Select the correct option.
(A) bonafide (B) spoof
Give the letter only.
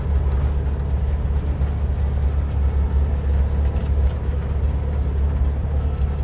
A